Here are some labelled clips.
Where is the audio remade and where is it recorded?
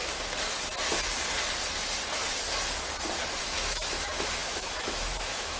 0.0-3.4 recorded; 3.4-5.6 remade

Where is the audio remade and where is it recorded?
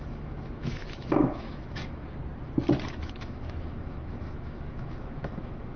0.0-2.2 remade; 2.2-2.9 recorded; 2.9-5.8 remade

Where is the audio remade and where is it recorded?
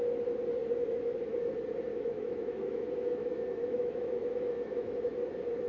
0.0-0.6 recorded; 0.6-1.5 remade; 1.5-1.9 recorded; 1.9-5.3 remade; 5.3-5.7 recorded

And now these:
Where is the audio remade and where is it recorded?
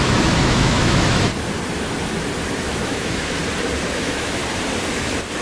0.0-1.3 remade; 1.3-2.6 recorded; 2.6-3.4 remade; 3.4-3.9 recorded; 3.9-4.4 remade; 4.4-5.4 recorded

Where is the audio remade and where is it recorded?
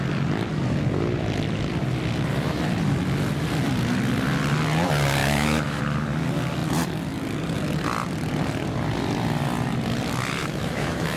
0.0-5.2 recorded; 5.2-5.8 remade; 5.8-10.4 recorded; 10.4-11.2 remade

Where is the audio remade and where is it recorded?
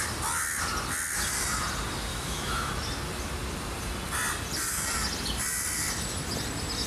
0.0-2.1 recorded; 2.1-2.7 remade; 2.7-6.9 recorded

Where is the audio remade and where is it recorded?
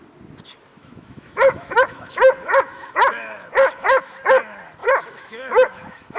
0.0-0.7 recorded; 0.7-4.1 remade; 4.1-4.8 recorded; 4.8-6.2 remade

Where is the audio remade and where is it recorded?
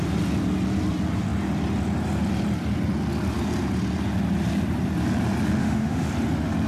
0.0-5.6 recorded; 5.6-6.1 remade; 6.1-6.7 recorded